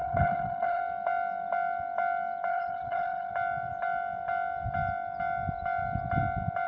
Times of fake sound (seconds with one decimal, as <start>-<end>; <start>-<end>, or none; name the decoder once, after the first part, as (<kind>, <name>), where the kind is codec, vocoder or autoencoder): 0.0-0.8 (codec, HILCodec); 2.5-3.3